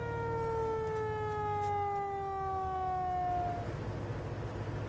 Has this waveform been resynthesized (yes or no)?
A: no